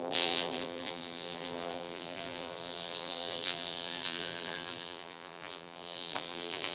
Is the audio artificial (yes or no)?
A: yes